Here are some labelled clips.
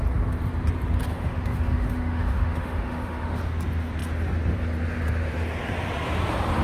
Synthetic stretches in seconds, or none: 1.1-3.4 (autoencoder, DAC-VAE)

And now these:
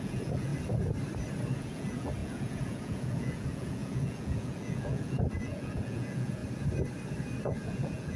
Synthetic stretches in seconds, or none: 0.0-0.5 (vocoder, Vocos); 1.5-6.4; 7.5-8.2

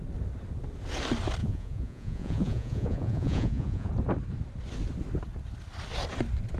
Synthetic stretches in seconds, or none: 1.4-3.9 (vocoder, Vocos)

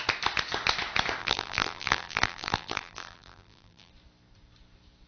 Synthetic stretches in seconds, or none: 1.2-3.9 (vocoder, BigVGAN v2)

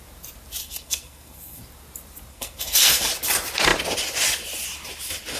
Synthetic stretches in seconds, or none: 0.6-1.6 (codec, SNAC); 2.3-3.1

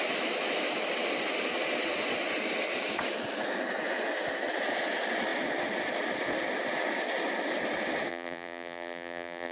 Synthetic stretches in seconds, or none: 8.1-9.5 (vocoder, BigVGAN v2)